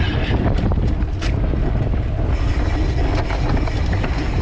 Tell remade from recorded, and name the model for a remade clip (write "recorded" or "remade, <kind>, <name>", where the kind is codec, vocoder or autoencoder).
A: recorded